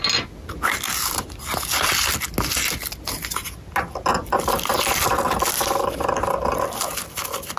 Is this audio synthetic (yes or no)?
no